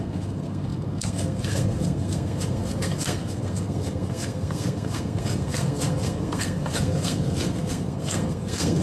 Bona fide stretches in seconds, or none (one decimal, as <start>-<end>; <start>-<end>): none